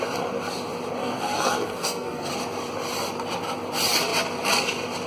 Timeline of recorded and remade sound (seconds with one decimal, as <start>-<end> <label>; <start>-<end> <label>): 0.0-1.0 recorded; 1.0-2.3 remade; 2.3-5.1 recorded